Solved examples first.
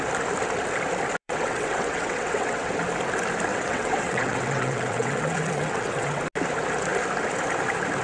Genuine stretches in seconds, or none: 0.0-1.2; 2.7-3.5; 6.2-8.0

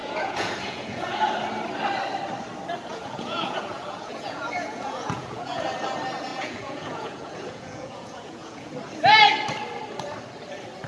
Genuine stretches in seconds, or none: 1.3-2.9; 5.6-6.3; 8.7-10.9

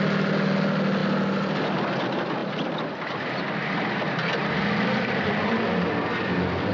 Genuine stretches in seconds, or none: 0.0-6.7

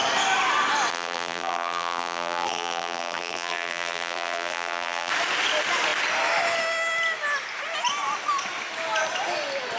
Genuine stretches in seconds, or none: 0.0-0.9; 5.1-9.8

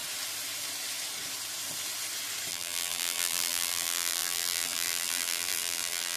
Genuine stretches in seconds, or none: 0.0-2.5

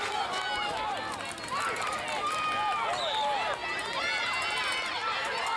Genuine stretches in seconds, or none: 0.0-5.6

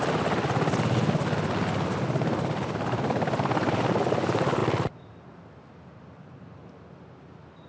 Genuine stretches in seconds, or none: 0.0-7.7

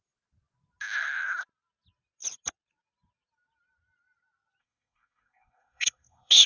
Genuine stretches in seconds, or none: 0.0-4.6